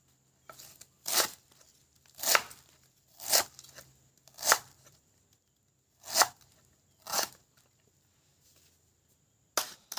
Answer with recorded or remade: recorded